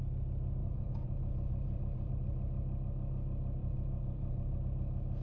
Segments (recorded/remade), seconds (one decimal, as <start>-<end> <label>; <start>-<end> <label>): 0.0-0.6 recorded; 0.6-2.1 remade; 2.1-3.6 recorded; 3.6-4.6 remade; 4.6-5.2 recorded